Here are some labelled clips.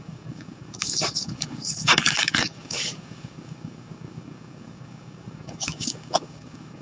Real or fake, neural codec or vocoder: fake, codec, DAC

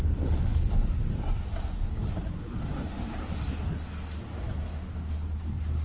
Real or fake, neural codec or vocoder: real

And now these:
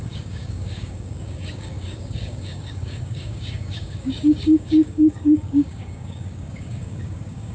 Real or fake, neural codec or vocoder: fake, codec, DAC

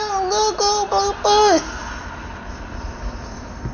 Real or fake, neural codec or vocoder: real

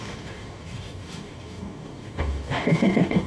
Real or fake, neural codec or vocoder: fake, codec, DAC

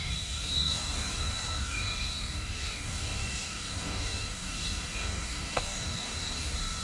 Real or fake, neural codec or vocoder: fake, codec, DAC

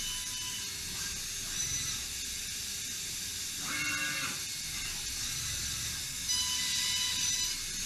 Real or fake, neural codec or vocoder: real